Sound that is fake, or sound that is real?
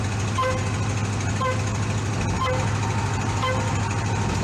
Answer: real